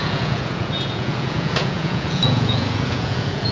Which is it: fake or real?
fake